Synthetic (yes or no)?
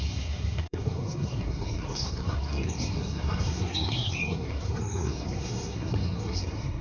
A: yes